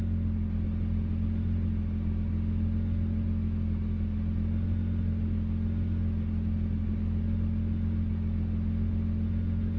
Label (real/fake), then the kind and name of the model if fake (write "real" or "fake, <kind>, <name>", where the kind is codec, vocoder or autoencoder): real